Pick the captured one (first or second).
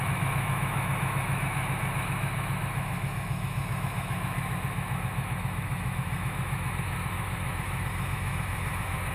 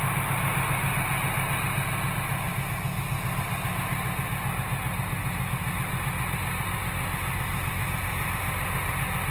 second